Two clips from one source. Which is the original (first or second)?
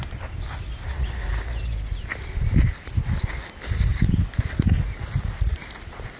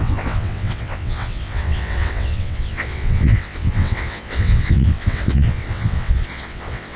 first